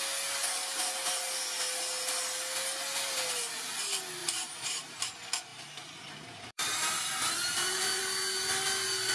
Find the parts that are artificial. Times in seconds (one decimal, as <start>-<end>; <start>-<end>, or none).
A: 4.2-5.1; 5.5-8.0